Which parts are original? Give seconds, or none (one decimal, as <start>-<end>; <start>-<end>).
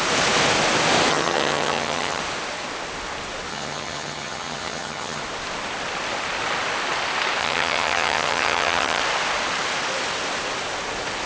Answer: 0.0-1.1; 2.2-3.5; 5.2-7.4; 9.0-11.3